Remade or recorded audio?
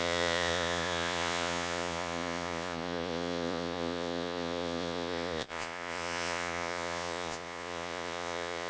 remade